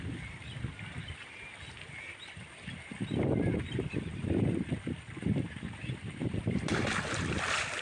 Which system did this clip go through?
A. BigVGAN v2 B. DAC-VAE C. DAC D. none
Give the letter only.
D